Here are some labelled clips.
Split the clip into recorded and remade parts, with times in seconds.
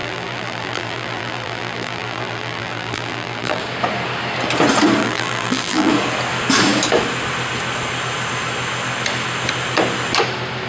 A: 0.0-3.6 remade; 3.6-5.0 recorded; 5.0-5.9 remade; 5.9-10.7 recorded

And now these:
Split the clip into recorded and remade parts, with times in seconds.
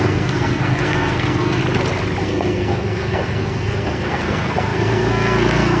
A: 0.0-1.6 remade; 1.6-2.2 recorded; 2.2-5.8 remade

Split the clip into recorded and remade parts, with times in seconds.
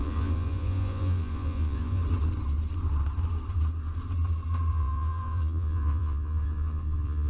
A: 0.0-2.0 remade; 2.0-4.7 recorded; 4.7-7.3 remade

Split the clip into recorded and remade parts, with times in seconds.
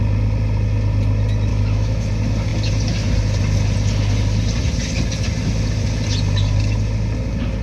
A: 0.0-1.5 recorded; 1.5-2.1 remade; 2.1-7.6 recorded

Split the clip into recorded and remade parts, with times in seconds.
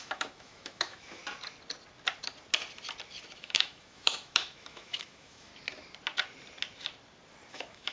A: 0.0-1.2 remade; 1.2-3.4 recorded; 3.4-5.5 remade; 5.5-7.5 recorded; 7.5-7.9 remade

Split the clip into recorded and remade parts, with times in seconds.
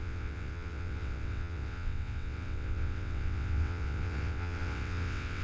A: 0.0-5.4 remade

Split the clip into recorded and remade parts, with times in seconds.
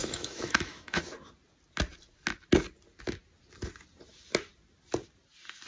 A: 0.0-1.0 remade; 1.0-5.7 recorded